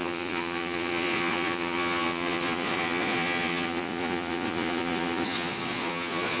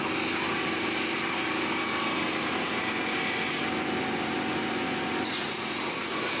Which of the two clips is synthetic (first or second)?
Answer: first